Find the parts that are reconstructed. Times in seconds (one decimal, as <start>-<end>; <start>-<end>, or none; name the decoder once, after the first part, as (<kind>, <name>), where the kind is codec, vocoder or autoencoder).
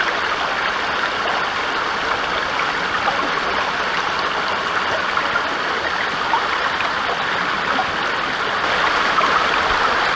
none